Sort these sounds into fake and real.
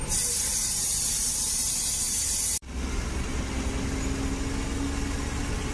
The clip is real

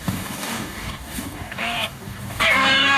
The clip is fake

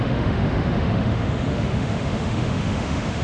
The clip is fake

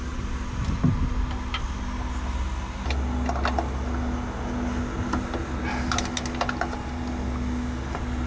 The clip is real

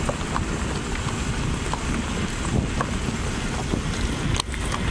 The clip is real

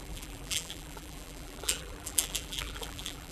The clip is fake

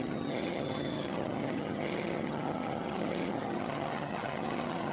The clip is fake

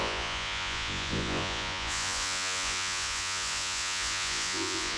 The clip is fake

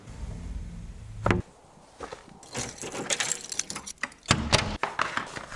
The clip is real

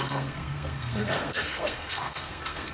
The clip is fake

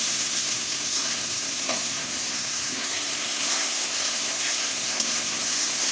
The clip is fake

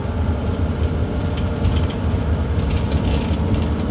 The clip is real